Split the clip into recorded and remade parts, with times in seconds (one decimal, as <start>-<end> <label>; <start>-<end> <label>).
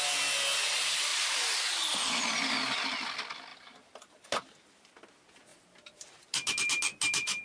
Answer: 0.0-3.5 recorded; 3.5-5.1 remade; 5.1-5.5 recorded; 5.5-7.4 remade